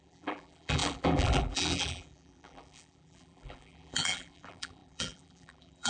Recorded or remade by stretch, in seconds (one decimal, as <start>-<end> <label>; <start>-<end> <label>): 0.0-5.9 remade